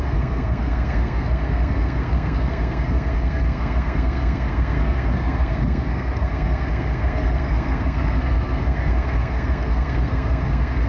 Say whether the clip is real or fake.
fake